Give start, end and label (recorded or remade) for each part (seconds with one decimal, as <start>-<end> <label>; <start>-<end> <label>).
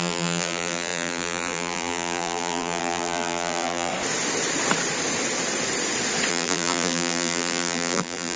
0.0-3.9 remade; 3.9-6.3 recorded; 6.3-8.4 remade